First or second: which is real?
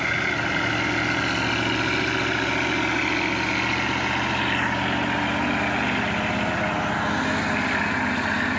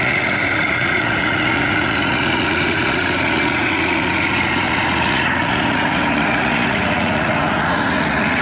first